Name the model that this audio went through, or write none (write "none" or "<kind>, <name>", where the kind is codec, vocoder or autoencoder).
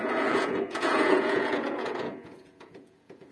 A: vocoder, Vocos